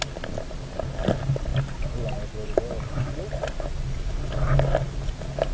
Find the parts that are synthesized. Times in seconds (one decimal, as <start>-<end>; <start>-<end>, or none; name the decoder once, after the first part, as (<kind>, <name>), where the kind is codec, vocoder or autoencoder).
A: none